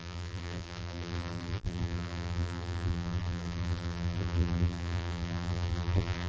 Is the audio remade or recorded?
remade